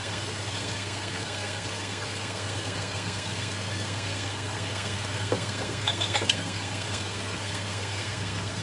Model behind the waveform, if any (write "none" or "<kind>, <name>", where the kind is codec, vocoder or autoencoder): codec, SNAC